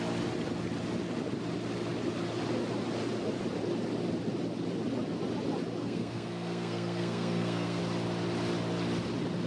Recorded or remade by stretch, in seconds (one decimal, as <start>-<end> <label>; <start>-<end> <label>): 0.0-5.8 recorded; 5.8-7.8 remade; 7.8-9.5 recorded